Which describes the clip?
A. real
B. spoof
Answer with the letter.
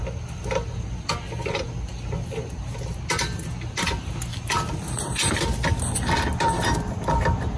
A